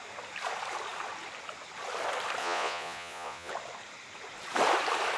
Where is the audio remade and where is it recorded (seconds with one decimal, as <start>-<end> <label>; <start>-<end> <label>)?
0.0-2.4 recorded; 2.4-3.5 remade; 3.5-5.2 recorded